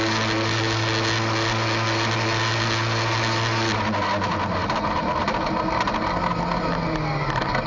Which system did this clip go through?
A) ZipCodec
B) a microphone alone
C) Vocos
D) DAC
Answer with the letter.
B